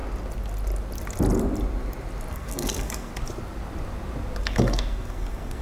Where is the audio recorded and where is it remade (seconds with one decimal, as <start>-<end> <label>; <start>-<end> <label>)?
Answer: 0.0-2.3 recorded; 2.3-3.1 remade; 3.1-4.4 recorded; 4.4-5.6 remade